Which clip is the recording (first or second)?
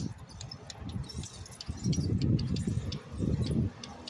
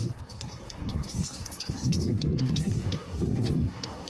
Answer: first